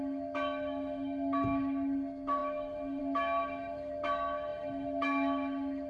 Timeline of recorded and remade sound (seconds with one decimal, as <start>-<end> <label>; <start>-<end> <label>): 0.0-5.9 remade